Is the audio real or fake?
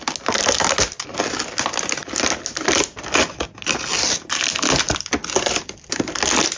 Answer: real